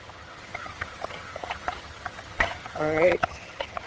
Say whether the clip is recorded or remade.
remade